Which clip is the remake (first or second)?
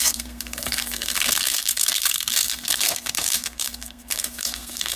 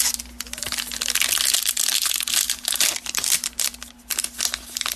first